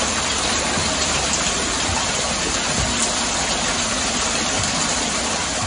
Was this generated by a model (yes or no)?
no